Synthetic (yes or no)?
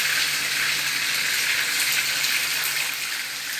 no